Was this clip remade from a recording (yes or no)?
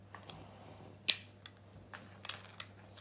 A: no